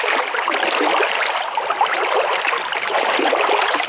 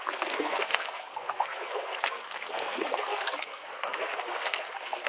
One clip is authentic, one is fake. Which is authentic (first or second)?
first